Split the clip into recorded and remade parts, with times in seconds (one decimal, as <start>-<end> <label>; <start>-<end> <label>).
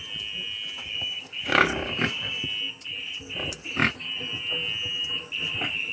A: 0.0-0.8 recorded; 0.8-2.4 remade; 2.4-5.9 recorded